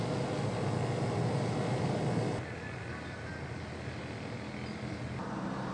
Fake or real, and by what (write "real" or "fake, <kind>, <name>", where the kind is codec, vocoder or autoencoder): real